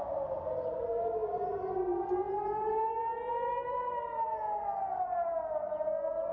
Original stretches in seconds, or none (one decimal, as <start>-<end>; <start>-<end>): 0.0-6.3